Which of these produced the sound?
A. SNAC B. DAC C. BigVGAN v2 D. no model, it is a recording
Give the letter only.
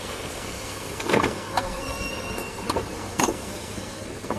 A